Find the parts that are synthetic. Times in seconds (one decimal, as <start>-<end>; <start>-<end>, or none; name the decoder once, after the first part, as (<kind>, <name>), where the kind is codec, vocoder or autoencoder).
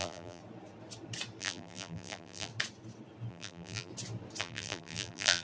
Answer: 0.0-0.4 (vocoder, BigVGAN v2); 1.4-2.5; 3.3-3.9; 4.4-5.4